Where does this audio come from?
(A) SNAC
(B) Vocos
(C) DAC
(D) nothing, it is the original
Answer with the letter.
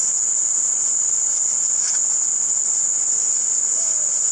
D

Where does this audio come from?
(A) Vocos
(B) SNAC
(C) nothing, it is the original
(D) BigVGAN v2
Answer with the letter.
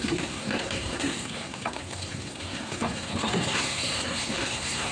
B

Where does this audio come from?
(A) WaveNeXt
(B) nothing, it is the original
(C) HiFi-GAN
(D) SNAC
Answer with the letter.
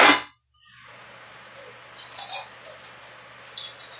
B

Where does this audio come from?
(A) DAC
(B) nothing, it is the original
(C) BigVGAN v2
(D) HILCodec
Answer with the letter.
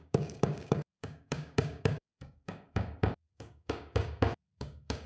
A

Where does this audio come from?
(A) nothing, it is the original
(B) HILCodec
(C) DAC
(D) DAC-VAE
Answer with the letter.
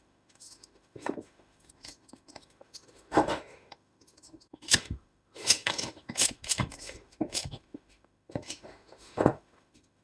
D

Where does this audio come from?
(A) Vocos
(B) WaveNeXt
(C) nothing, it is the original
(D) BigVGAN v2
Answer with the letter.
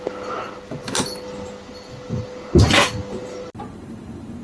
C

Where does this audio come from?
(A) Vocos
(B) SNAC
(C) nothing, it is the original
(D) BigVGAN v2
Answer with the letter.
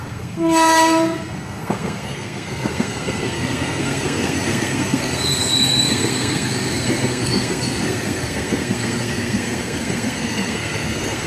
B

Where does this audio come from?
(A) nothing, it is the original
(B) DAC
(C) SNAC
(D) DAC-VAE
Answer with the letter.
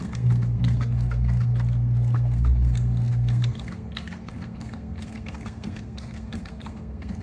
C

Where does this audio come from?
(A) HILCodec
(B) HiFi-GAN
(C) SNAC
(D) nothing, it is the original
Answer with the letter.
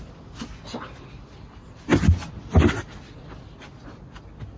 D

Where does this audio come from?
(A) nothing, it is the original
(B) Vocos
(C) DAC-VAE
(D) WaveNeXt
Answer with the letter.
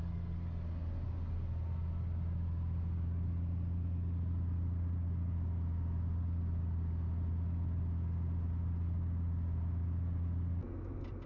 A